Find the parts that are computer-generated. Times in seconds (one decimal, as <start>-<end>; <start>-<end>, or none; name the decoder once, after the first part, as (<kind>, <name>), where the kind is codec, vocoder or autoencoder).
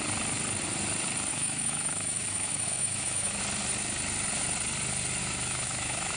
1.3-3.4 (autoencoder, DAC-VAE); 5.2-6.2